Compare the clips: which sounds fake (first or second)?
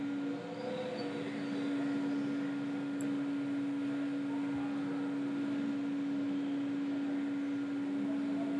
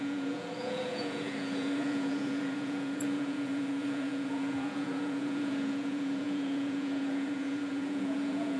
second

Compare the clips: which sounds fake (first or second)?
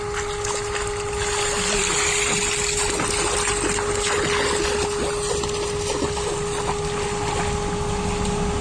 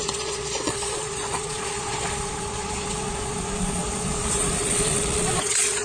second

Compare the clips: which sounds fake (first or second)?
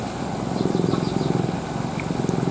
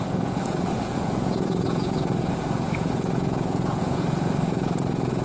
second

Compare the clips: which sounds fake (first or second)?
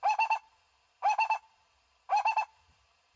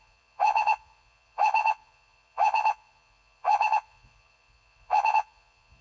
second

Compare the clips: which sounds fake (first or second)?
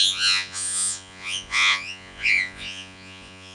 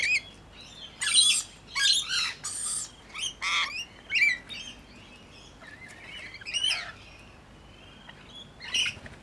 first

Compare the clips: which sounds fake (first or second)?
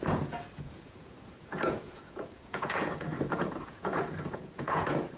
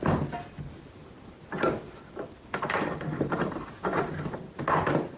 first